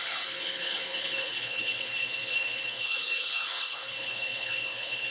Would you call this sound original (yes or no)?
no